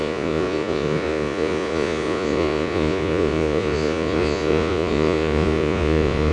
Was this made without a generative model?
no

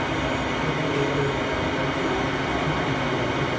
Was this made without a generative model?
yes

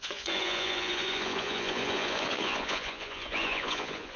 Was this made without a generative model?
no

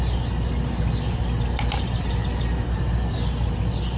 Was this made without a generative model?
yes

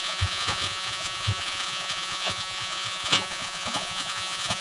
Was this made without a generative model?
no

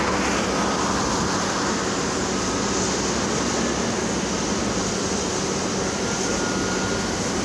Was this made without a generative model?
yes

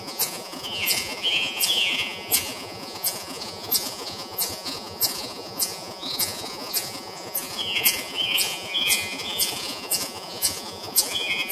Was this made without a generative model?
no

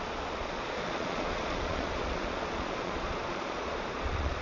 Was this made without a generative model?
no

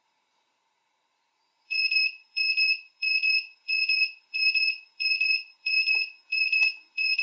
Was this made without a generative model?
no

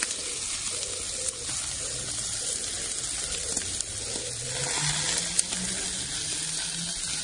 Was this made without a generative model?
yes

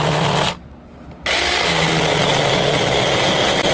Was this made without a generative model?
yes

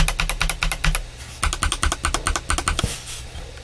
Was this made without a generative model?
yes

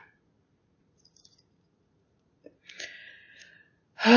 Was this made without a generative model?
no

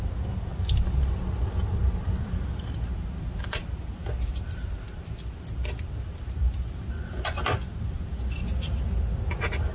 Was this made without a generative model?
yes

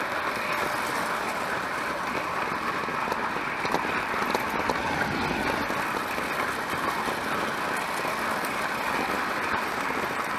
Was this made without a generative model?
yes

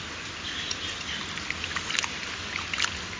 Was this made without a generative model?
yes